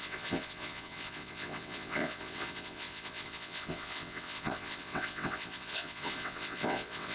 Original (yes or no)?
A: no